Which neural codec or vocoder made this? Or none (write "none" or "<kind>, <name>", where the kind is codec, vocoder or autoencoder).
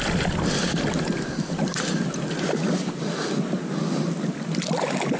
none